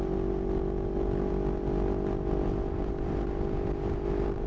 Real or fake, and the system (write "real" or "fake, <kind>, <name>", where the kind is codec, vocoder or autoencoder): real